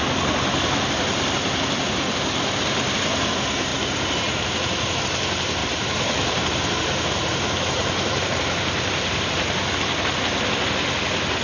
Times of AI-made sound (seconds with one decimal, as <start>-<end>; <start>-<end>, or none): 3.7-5.0; 5.6-9.7